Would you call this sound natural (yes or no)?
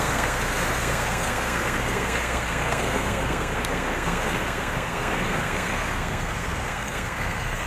no